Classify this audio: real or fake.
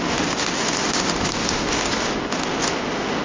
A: real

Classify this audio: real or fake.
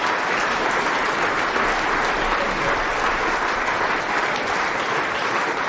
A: real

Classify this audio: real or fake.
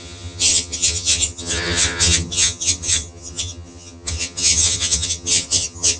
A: fake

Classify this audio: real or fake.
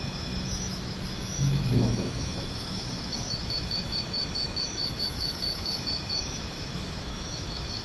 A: fake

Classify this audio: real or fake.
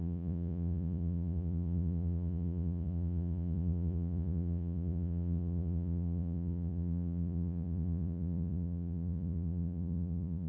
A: fake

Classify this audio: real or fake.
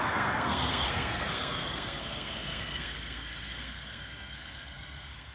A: fake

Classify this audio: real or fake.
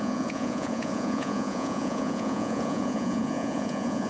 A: fake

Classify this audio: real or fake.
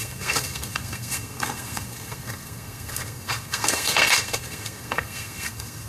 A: fake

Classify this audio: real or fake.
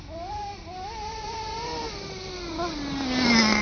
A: real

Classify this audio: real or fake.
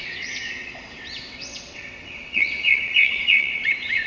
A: fake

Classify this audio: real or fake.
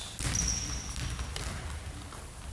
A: real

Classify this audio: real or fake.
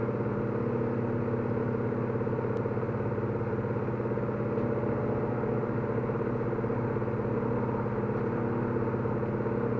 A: real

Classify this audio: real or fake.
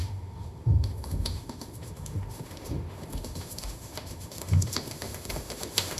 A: fake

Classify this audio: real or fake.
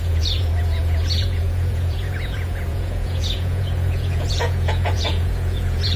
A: fake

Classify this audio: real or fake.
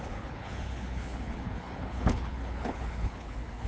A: fake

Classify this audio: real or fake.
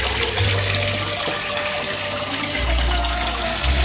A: real